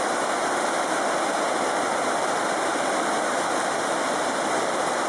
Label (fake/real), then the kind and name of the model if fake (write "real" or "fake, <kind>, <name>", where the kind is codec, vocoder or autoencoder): real